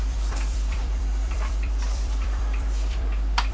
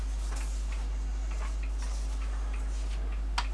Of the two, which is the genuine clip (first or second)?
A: second